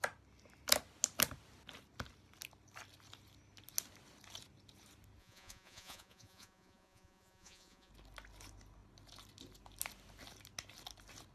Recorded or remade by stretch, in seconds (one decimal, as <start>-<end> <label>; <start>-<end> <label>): 0.0-5.2 recorded; 5.2-7.9 remade; 7.9-11.3 recorded